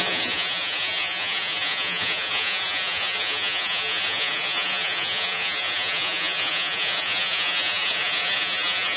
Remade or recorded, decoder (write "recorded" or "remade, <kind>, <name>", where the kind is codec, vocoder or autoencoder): remade, vocoder, Vocos